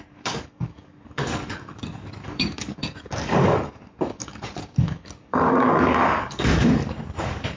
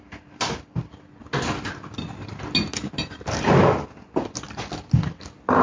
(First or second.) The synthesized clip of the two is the first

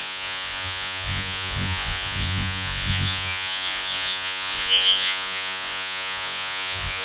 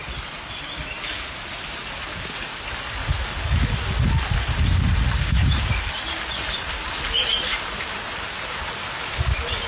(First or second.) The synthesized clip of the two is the first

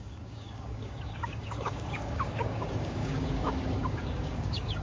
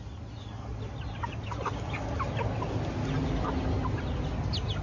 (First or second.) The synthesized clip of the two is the first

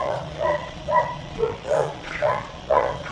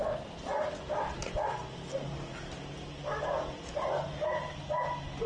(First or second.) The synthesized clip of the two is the first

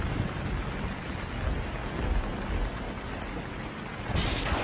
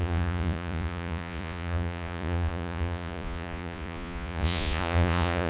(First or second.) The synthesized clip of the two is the second